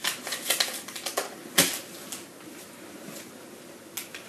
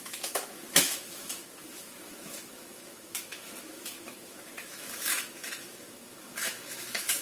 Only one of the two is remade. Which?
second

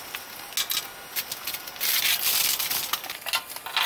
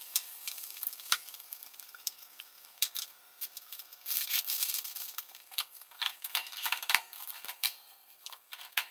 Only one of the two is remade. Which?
second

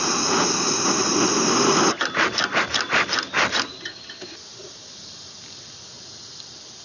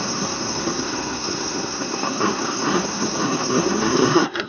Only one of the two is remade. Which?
second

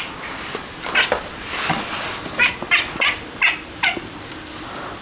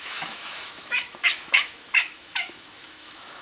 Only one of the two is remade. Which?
second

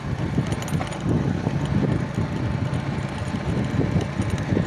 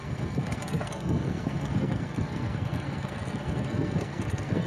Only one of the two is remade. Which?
second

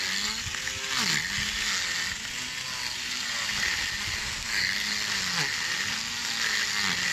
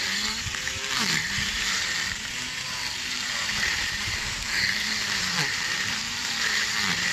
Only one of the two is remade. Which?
second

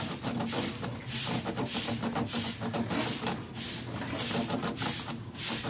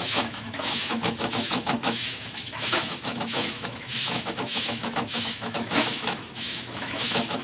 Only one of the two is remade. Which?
second